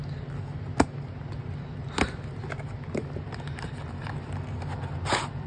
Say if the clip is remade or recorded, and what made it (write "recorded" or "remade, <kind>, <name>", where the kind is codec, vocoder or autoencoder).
recorded